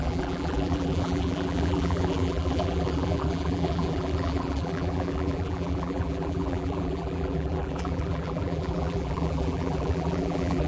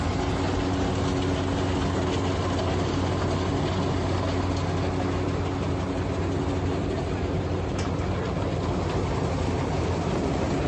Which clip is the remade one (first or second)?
first